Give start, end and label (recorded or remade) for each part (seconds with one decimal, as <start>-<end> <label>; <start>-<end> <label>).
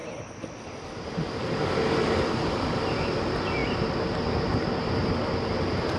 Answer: 0.0-3.6 recorded; 3.6-4.1 remade; 4.1-6.0 recorded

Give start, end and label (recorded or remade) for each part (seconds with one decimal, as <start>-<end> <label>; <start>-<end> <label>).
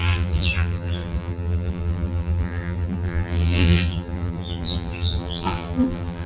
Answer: 0.0-6.3 remade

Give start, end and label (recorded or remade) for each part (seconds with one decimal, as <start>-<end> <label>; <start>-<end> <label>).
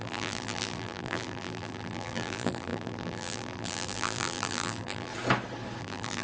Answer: 0.0-5.1 remade; 5.1-5.8 recorded; 5.8-6.2 remade